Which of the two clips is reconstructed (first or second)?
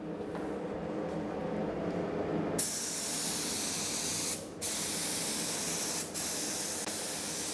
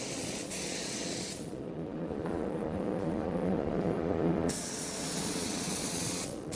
second